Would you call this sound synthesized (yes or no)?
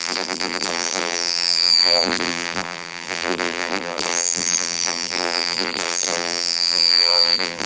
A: yes